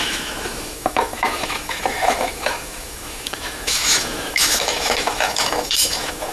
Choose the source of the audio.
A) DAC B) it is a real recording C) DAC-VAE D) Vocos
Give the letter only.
C